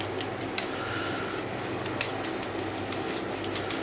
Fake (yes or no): no